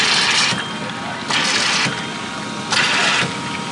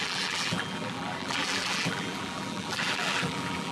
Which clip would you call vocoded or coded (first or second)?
second